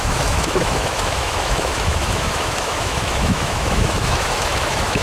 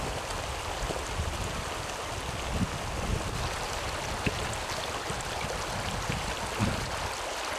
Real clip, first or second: second